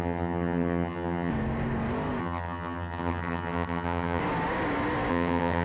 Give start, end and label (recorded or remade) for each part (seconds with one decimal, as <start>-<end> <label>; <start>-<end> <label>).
0.0-1.3 remade; 1.3-2.2 recorded; 2.2-4.2 remade; 4.2-5.1 recorded; 5.1-5.6 remade